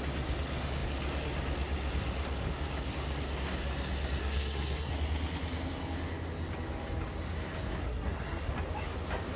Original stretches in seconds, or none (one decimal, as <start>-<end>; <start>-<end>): 0.0-4.2; 4.9-7.8; 8.5-9.4